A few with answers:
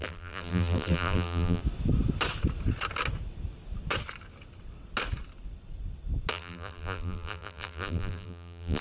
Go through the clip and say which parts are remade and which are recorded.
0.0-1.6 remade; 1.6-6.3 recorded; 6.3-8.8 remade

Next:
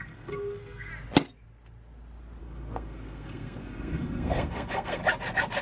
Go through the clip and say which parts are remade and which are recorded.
0.0-0.9 remade; 0.9-2.4 recorded; 2.4-5.0 remade; 5.0-5.6 recorded

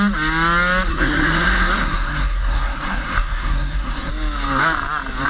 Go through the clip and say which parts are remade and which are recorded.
0.0-0.9 recorded; 0.9-4.1 remade; 4.1-5.3 recorded

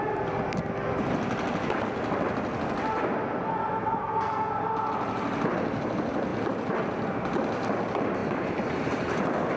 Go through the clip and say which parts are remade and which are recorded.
0.0-4.0 recorded; 4.0-4.5 remade; 4.5-9.6 recorded

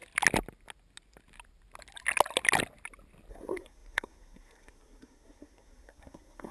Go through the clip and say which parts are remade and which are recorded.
0.0-3.3 recorded; 3.3-6.5 remade